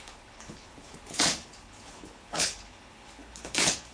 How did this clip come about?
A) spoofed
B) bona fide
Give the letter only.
A